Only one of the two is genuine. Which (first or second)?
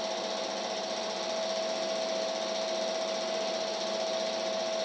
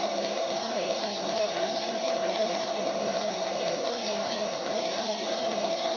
first